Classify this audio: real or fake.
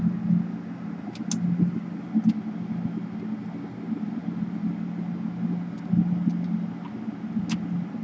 real